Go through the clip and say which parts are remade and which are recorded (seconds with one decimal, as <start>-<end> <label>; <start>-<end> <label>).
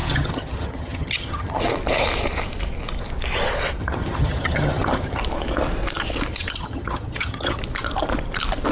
0.0-1.6 remade; 1.6-3.8 recorded; 3.8-5.2 remade; 5.2-6.3 recorded; 6.3-7.6 remade; 7.6-8.7 recorded